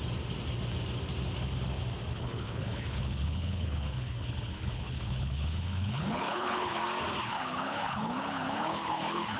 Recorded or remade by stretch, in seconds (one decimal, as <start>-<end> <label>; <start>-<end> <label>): 0.0-2.1 recorded; 2.1-6.8 remade; 6.8-7.3 recorded; 7.3-9.4 remade